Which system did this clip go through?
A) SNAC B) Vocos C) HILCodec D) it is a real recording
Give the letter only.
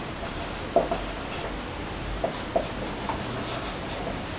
D